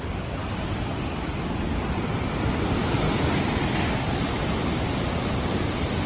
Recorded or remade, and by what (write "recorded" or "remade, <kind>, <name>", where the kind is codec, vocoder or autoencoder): recorded